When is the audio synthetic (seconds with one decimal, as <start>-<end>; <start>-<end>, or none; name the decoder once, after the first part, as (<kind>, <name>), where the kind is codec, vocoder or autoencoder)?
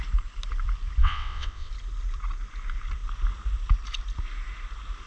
1.0-1.7 (vocoder, WaveNeXt)